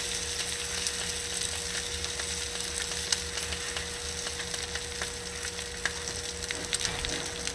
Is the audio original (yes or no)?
yes